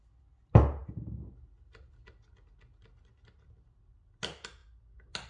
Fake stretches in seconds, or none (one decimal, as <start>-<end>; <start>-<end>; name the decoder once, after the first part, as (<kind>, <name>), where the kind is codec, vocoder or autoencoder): none